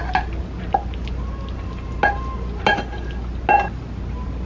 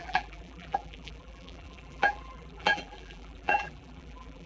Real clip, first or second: first